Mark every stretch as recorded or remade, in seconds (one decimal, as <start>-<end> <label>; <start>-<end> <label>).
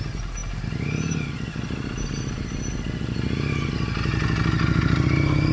0.0-5.5 recorded